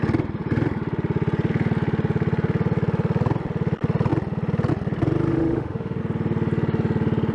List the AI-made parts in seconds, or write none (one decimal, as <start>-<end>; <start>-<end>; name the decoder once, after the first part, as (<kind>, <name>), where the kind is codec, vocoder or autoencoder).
5.3-6.0 (autoencoder, DAC-VAE)